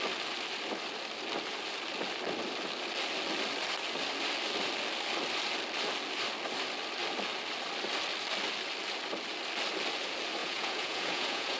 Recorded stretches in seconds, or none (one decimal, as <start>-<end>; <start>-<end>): 0.0-10.4